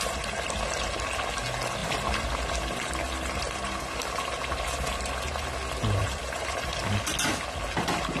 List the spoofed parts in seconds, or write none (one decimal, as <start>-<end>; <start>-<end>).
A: 1.8-2.3; 6.0-7.1